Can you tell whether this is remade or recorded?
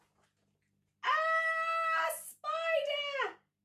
recorded